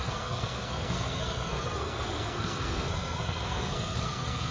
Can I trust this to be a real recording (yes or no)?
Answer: no